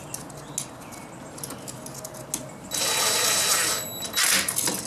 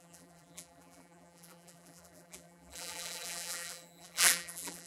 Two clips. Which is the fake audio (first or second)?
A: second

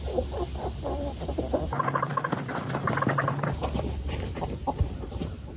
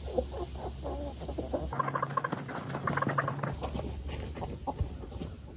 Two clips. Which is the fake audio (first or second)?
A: first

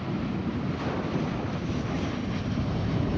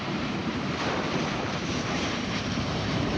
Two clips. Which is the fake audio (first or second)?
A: second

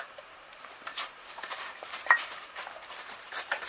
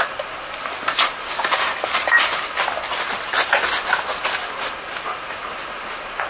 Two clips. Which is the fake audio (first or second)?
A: first